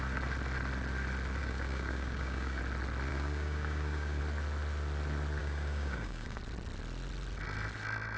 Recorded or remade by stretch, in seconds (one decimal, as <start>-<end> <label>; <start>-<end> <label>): 0.0-1.4 recorded; 1.4-2.6 remade; 2.6-3.1 recorded; 3.1-4.2 remade; 4.2-5.4 recorded; 5.4-6.4 remade; 6.4-8.2 recorded